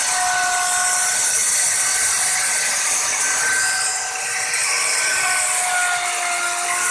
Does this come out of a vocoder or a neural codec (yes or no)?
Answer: no